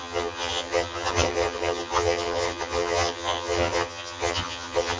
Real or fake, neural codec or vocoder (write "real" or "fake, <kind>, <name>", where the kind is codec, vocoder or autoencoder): fake, vocoder, HiFi-GAN